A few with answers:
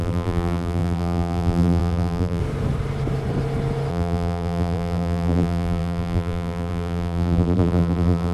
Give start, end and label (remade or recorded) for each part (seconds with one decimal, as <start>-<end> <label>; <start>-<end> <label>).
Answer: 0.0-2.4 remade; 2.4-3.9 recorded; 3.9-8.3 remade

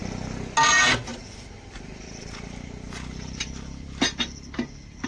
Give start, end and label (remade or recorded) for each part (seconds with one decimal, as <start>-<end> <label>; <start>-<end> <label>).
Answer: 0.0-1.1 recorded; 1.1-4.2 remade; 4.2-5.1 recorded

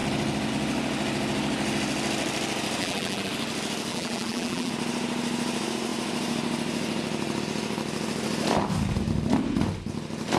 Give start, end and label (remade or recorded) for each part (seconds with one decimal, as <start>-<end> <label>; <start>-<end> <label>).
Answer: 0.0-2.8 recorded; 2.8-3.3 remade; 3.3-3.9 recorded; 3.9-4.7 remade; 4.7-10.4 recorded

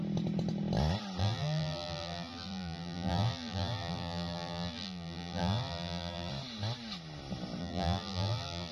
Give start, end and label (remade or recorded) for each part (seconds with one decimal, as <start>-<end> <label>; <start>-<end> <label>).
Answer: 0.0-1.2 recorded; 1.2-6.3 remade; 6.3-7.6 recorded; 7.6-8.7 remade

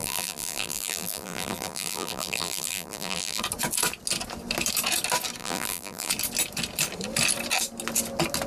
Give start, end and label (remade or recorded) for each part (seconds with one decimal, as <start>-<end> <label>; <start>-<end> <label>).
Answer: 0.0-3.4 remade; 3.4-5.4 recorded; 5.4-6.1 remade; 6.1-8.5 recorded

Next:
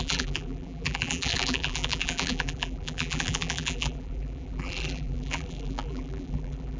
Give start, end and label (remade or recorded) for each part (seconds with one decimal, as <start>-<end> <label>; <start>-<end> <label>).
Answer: 0.0-6.8 remade

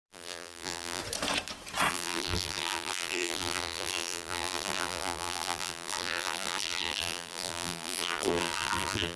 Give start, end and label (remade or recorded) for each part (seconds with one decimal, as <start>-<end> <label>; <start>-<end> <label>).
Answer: 0.0-1.0 remade; 1.0-1.9 recorded; 1.9-9.2 remade